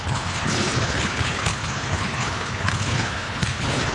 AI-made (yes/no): yes